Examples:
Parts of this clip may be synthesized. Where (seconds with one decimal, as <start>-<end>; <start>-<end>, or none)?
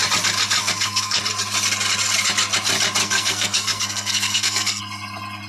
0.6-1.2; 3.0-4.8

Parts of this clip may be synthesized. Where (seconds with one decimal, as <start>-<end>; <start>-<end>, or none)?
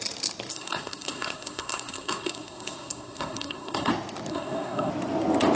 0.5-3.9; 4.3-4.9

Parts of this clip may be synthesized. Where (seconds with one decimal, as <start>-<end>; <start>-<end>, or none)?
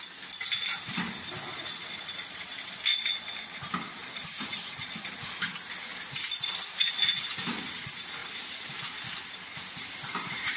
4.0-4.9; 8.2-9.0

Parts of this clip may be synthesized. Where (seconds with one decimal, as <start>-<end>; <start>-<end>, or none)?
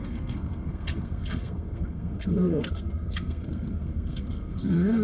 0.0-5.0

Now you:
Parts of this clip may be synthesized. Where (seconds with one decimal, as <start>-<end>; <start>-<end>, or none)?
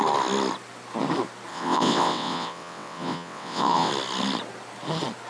1.5-3.9